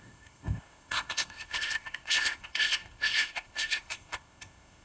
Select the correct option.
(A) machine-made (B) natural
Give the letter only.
A